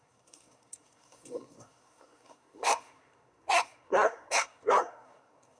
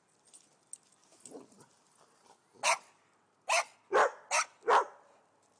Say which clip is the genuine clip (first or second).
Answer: second